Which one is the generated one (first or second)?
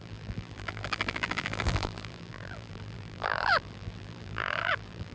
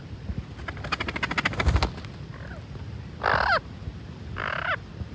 first